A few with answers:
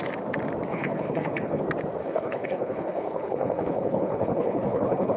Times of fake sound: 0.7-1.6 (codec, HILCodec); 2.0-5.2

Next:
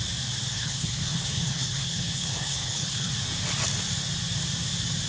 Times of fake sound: 0.5-3.1 (codec, HILCodec)

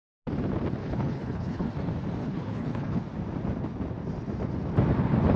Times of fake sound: 0.8-1.7 (codec, HILCodec); 2.2-3.0